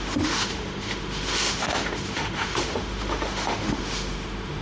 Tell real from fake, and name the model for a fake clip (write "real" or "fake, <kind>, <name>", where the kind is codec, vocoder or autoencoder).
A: fake, autoencoder, DAC-VAE